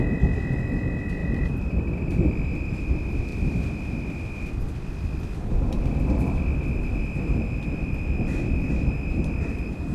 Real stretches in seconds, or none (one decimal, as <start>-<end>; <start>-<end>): 0.0-1.2; 2.3-3.3; 3.9-9.9